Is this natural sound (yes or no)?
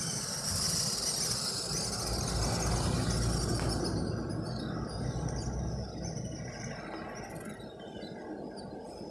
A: yes